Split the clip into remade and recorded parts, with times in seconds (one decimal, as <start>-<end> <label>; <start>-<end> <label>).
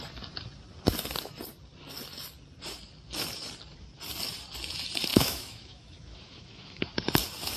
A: 0.0-5.1 recorded; 5.1-6.8 remade; 6.8-7.6 recorded